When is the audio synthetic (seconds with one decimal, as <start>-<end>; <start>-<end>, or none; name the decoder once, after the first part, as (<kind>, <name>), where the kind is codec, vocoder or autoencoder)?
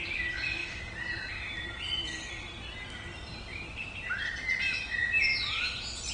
none